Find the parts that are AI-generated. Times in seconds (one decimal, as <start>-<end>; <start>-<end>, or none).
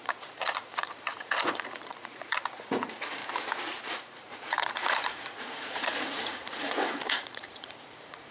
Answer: 0.0-3.2; 3.8-8.3